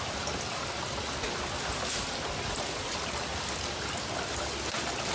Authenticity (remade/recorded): recorded